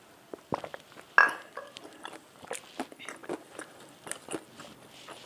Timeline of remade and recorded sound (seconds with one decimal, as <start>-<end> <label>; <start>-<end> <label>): 0.0-1.2 recorded; 1.2-2.6 remade; 2.6-3.2 recorded; 3.2-4.2 remade; 4.2-5.3 recorded